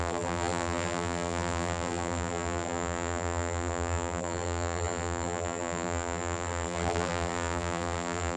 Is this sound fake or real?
fake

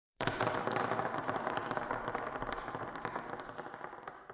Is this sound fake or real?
fake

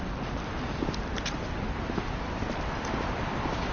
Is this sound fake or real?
fake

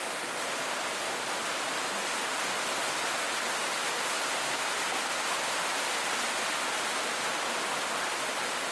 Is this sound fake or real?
real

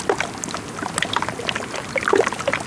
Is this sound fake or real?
real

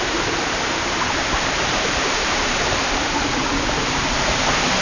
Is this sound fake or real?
fake